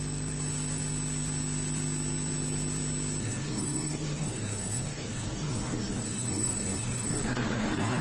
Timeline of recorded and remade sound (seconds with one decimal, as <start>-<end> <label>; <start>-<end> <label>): 0.0-3.2 recorded; 3.2-8.0 remade